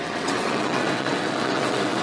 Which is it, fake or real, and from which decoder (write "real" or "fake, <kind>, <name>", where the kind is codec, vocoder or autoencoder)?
fake, vocoder, WaveNeXt